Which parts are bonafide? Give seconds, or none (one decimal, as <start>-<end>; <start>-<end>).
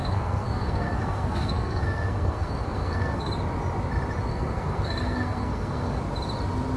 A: 3.3-4.3; 6.0-6.8